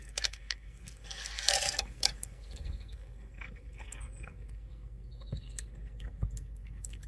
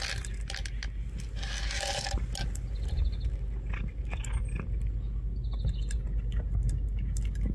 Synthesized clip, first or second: first